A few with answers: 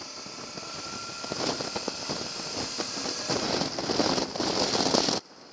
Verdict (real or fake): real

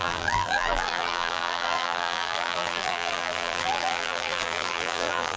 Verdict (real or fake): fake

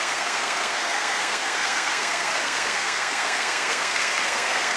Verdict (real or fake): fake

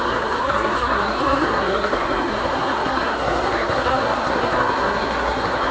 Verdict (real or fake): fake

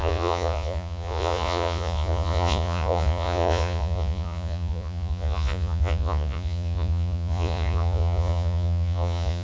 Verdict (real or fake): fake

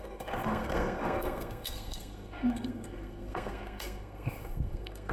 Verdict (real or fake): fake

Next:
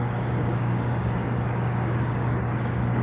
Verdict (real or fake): fake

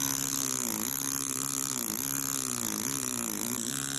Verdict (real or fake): real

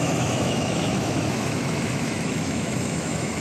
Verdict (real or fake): fake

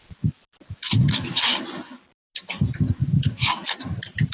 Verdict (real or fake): real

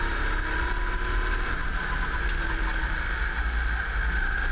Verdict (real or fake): real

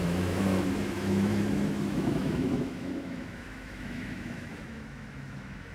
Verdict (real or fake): fake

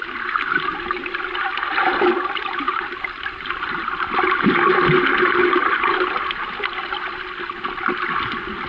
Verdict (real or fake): real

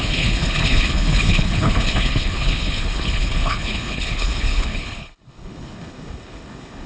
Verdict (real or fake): fake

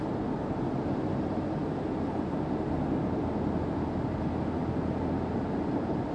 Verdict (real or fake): real